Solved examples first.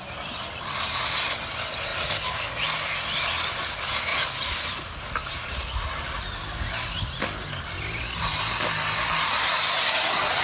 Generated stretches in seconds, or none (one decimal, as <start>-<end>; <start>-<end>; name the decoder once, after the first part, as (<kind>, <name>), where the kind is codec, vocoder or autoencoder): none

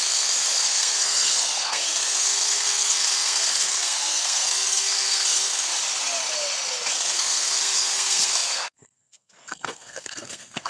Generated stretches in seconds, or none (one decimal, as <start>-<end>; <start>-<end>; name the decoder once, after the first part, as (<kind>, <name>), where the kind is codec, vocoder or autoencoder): 0.0-5.7 (codec, SNAC); 6.9-10.7

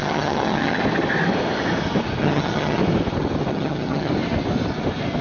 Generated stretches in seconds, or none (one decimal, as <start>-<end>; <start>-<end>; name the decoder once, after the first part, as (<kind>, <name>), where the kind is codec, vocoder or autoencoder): 0.0-0.8 (vocoder, HiFi-GAN); 2.2-2.8; 3.5-4.1

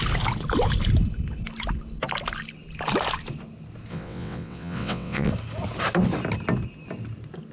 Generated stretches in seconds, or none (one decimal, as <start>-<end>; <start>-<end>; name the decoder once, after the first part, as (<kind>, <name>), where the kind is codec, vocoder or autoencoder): 3.9-5.3 (vocoder, WaveNeXt)